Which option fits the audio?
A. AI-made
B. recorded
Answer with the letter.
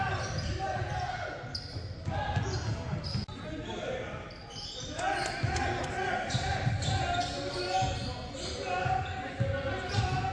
B